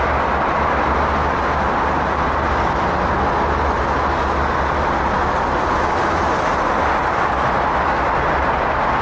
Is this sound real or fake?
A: real